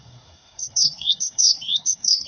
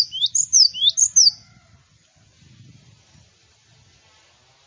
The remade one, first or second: first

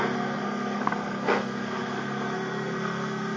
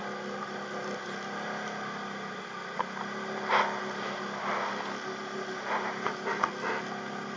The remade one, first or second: first